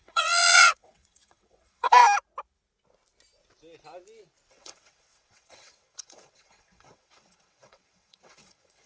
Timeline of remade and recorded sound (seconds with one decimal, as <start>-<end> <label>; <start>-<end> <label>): 0.0-2.0 remade; 2.0-4.5 recorded; 4.5-8.9 remade

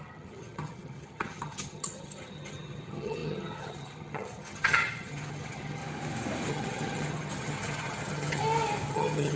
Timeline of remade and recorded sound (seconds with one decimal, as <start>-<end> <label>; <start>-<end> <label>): 0.0-5.8 remade; 5.8-6.5 recorded; 6.5-8.4 remade; 8.4-8.9 recorded; 8.9-9.4 remade

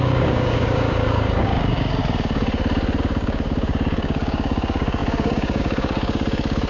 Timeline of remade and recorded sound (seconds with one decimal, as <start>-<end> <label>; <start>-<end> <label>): 0.0-2.0 remade; 2.0-3.0 recorded; 3.0-6.7 remade

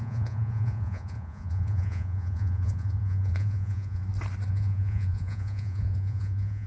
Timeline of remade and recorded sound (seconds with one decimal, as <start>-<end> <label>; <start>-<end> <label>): 0.0-4.0 remade; 4.0-4.5 recorded; 4.5-6.7 remade

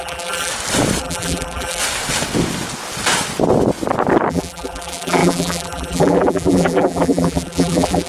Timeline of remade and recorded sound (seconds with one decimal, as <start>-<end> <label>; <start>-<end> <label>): 0.0-0.5 remade; 0.5-1.0 recorded; 1.0-1.8 remade; 1.8-4.3 recorded; 4.3-8.1 remade